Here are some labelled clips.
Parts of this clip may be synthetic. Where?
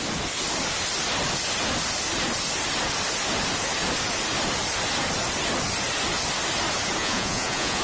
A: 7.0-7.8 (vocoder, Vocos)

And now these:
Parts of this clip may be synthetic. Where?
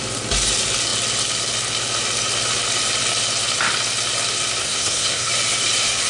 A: 4.6-5.3 (codec, SNAC)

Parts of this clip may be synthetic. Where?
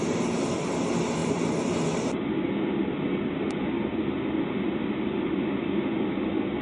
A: none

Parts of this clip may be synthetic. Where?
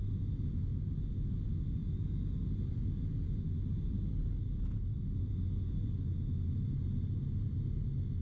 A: none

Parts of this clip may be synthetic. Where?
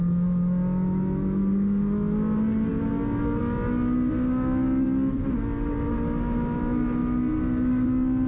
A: none